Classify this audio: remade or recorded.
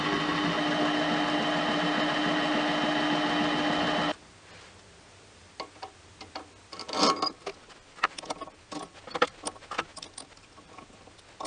recorded